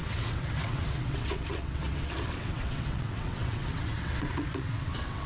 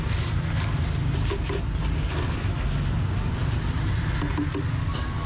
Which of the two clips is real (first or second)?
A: second